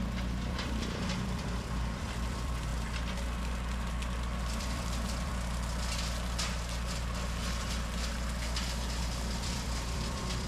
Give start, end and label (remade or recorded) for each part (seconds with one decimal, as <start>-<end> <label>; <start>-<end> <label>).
0.0-2.7 remade; 2.7-4.6 recorded; 4.6-5.3 remade; 5.3-9.0 recorded; 9.0-10.5 remade